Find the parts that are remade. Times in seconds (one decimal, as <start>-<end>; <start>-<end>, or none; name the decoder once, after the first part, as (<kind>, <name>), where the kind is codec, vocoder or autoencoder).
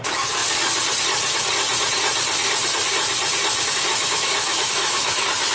0.0-0.4 (autoencoder, DAC-VAE); 3.7-5.5